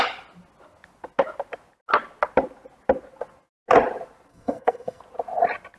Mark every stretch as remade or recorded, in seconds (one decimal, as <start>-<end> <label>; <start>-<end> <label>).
0.0-4.3 recorded; 4.3-5.0 remade; 5.0-5.8 recorded